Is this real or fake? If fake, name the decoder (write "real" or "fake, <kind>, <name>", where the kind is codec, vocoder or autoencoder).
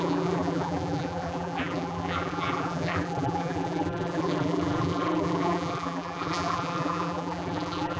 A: fake, vocoder, BigVGAN v2